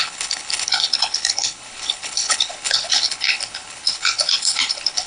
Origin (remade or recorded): remade